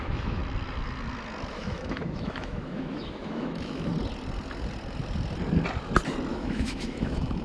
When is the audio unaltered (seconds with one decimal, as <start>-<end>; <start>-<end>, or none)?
0.4-1.5; 3.9-6.3